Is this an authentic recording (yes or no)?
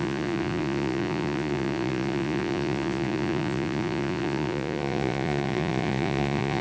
no